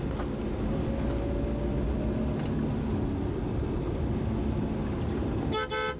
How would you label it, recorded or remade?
recorded